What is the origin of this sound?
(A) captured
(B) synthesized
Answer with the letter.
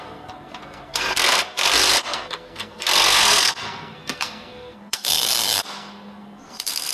B